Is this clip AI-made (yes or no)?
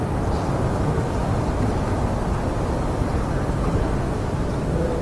no